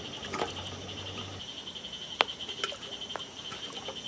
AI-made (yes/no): no